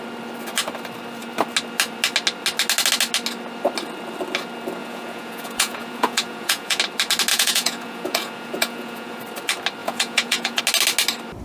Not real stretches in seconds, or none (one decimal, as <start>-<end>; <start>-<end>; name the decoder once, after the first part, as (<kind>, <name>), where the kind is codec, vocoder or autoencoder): 4.8-6.8 (vocoder, Vocos); 7.3-9.2; 9.8-10.6